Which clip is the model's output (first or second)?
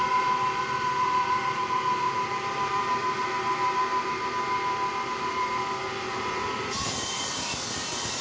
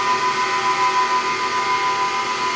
first